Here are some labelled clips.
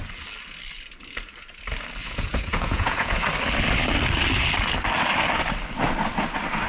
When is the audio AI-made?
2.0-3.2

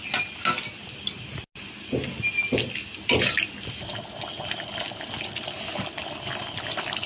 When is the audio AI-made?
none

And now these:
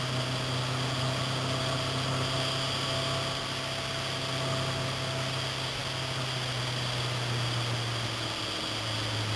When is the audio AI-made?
none